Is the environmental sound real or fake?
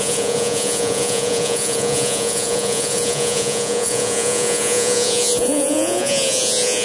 fake